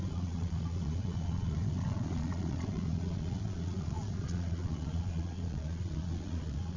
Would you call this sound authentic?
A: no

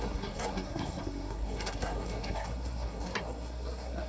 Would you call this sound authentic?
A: no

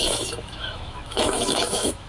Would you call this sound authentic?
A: no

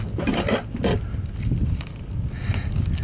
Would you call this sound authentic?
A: yes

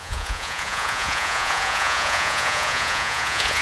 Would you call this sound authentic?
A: no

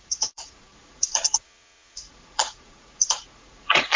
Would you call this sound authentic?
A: no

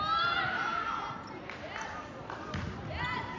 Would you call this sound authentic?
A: yes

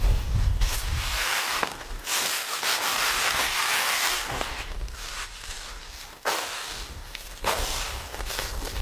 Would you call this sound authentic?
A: no